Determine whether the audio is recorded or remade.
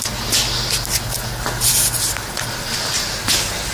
recorded